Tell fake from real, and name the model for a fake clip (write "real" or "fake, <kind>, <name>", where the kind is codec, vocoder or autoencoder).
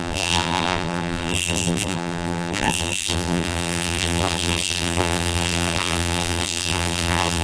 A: fake, vocoder, BigVGAN v2